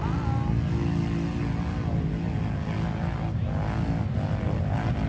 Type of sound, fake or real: real